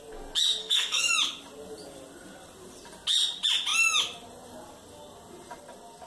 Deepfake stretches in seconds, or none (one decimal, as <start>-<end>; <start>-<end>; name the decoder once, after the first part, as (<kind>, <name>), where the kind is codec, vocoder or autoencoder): 0.6-1.1 (codec, SNAC)